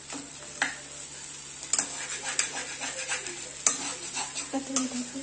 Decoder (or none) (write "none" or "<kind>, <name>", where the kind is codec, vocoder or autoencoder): none